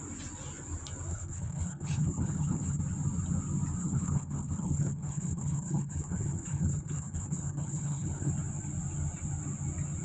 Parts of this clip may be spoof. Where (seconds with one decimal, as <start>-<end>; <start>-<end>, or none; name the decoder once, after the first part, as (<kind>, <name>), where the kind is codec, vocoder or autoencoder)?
1.1-2.8 (codec, HILCodec); 3.8-8.3

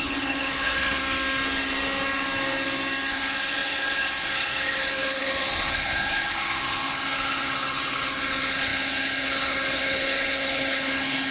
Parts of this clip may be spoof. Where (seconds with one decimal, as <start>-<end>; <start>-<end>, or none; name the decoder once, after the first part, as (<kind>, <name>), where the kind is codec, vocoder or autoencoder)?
0.0-1.0 (codec, HILCodec); 3.1-11.3